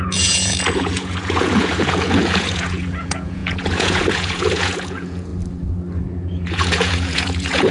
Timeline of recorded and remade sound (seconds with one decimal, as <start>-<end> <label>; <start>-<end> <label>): 0.0-5.3 remade; 5.3-6.0 recorded; 6.0-7.7 remade